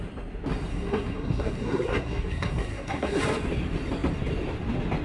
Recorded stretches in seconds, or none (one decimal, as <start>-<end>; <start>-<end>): 0.0-0.7; 3.2-5.0